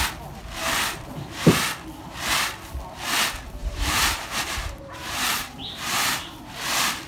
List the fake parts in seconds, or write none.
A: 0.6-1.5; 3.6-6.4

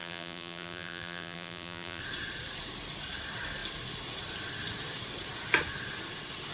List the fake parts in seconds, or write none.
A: 0.0-2.0

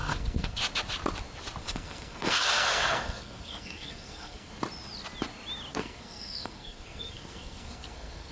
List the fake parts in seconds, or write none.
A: 0.0-0.6; 1.6-4.5; 5.7-8.3